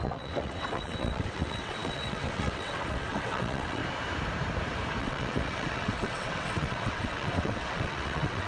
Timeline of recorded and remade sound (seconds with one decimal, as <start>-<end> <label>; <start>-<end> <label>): 0.0-3.8 remade; 3.8-5.0 recorded; 5.0-8.5 remade